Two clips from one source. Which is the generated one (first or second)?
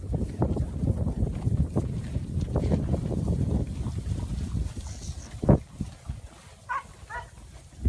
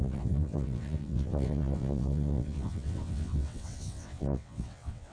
second